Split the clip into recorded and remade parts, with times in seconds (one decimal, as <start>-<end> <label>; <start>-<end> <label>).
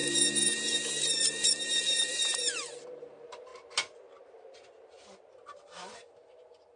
0.0-3.5 remade; 3.5-5.3 recorded; 5.3-6.8 remade